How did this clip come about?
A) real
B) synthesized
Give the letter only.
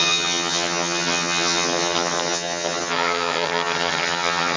B